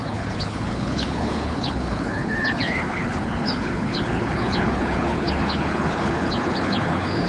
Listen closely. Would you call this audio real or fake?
fake